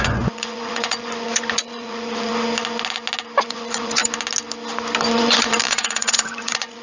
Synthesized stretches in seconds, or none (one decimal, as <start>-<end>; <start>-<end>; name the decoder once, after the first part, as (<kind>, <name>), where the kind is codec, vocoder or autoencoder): 0.0-2.3 (vocoder, Vocos); 3.4-4.0; 5.1-6.8

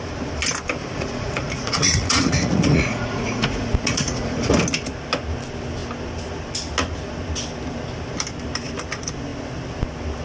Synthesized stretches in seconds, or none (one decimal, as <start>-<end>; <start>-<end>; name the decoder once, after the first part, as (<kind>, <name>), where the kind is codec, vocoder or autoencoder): 0.8-4.5 (vocoder, Vocos)

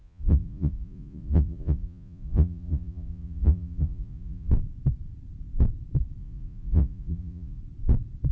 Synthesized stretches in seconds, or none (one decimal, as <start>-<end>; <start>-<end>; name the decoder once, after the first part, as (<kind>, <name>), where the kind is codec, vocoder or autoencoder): 0.0-4.5 (vocoder, Vocos); 6.2-7.6

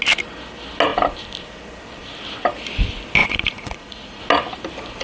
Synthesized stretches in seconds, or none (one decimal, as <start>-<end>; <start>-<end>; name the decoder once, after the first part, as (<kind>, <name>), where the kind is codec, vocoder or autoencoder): 3.2-4.2 (vocoder, Vocos)

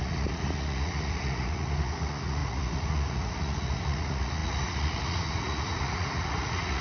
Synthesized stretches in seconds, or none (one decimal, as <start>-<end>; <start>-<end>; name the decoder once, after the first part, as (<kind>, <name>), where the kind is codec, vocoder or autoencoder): 0.0-6.8 (vocoder, Vocos)

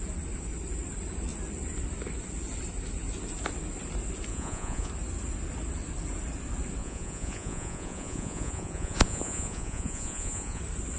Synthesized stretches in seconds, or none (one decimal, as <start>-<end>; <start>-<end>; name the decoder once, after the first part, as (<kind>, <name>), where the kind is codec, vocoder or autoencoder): 4.3-4.9 (vocoder, Vocos); 6.8-10.6

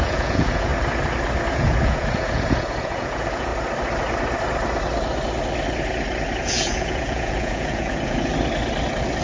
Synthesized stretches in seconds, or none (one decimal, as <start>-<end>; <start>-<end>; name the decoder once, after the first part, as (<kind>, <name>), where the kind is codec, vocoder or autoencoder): 0.0-0.7 (vocoder, Vocos); 1.5-3.5; 6.4-8.3

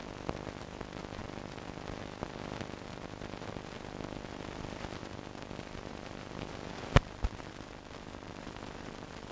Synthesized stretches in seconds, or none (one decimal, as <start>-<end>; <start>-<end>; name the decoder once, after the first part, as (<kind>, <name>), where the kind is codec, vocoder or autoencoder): none